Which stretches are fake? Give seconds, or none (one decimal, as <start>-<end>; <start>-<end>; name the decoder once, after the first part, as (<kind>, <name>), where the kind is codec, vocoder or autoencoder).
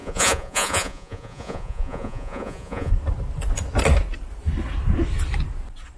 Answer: 0.0-2.9 (vocoder, Vocos)